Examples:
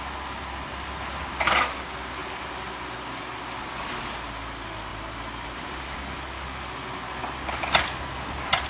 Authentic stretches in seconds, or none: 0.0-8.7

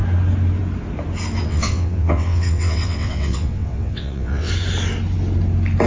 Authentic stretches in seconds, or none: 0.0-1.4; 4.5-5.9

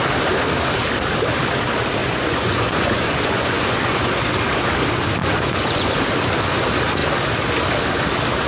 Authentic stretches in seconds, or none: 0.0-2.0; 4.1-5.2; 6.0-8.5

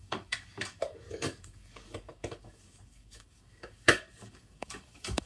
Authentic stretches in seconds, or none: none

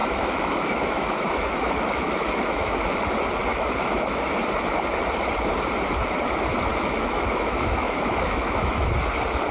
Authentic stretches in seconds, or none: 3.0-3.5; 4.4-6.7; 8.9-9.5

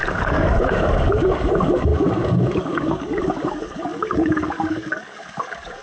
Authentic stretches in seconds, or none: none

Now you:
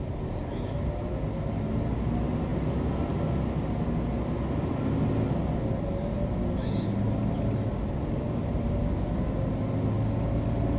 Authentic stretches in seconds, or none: 0.0-2.5; 3.1-10.8

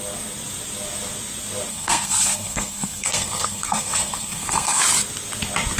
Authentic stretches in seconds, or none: 0.0-1.7; 4.8-5.8